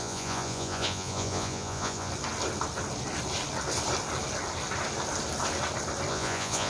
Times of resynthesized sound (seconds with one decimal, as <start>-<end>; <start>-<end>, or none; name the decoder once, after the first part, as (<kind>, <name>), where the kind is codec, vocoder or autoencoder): 0.0-2.1 (vocoder, Vocos); 6.1-6.7